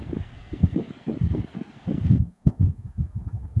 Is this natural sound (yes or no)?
no